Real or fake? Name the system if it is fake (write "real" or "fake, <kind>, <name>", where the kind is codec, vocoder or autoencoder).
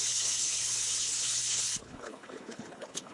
fake, codec, HILCodec